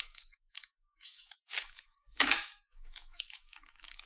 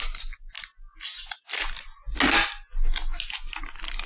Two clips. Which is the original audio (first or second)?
second